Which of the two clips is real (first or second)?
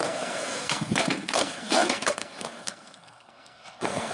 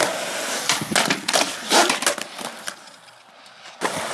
second